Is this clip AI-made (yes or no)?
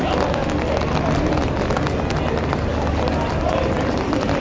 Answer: no